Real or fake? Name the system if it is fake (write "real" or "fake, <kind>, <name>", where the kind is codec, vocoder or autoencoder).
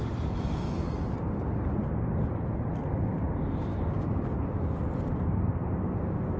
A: real